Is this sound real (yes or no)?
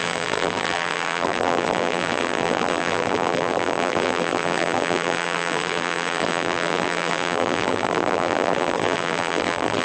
no